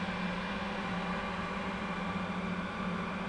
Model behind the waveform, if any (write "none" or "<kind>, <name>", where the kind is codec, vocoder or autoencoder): none